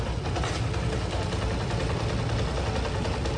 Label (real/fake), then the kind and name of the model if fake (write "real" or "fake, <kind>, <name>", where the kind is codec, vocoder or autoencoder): real